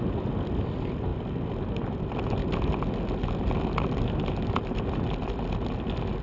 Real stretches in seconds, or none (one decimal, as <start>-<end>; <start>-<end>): 0.0-6.2